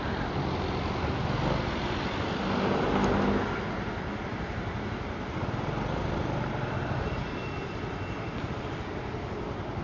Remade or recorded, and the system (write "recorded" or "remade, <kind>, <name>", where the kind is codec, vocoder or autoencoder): recorded